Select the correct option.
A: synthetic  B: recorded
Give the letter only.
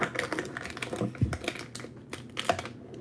B